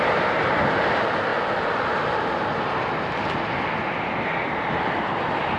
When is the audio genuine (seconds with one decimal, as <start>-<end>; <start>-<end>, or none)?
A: 0.0-5.6